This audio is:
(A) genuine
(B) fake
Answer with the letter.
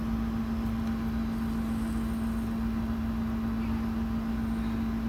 A